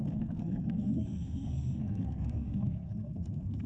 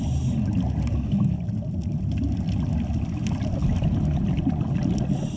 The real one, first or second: second